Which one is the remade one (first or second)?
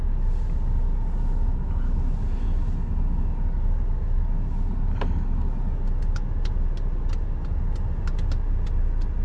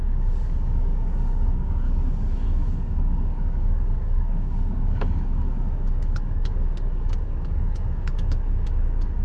second